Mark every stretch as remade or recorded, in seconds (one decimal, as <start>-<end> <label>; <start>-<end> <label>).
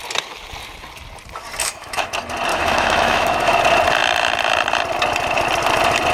0.0-1.6 recorded; 1.6-2.1 remade; 2.1-2.5 recorded; 2.5-3.6 remade; 3.6-6.1 recorded